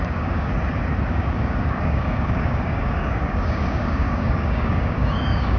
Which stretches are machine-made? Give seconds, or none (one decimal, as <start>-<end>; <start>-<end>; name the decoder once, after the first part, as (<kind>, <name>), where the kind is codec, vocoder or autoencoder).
0.0-0.5 (codec, DAC); 1.1-5.6